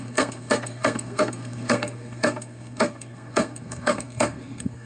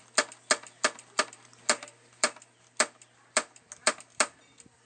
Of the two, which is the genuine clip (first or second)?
second